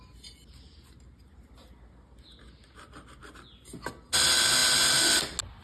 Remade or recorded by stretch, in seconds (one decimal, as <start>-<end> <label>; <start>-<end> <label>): 0.0-5.6 recorded

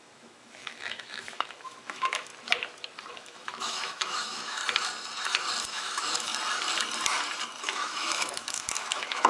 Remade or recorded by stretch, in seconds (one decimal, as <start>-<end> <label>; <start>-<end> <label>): 0.0-2.3 remade; 2.3-3.1 recorded; 3.1-4.6 remade; 4.6-5.6 recorded; 5.6-6.3 remade; 6.3-7.6 recorded; 7.6-9.3 remade

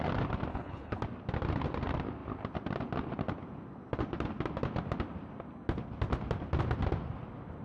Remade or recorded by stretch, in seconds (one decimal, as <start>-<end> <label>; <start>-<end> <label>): 0.0-0.5 recorded; 0.5-1.0 remade; 1.0-7.6 recorded

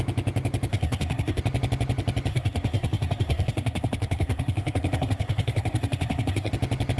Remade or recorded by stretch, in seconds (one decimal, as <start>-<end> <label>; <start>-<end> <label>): 0.0-0.7 recorded; 0.7-1.4 remade; 1.4-2.3 recorded; 2.3-6.5 remade; 6.5-7.0 recorded

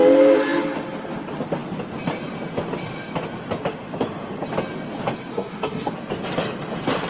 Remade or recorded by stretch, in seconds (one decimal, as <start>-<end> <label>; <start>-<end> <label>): 0.0-5.3 recorded; 5.3-5.9 remade; 5.9-7.1 recorded

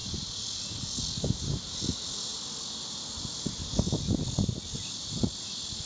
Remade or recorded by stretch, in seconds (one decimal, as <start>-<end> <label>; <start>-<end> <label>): 0.0-5.9 recorded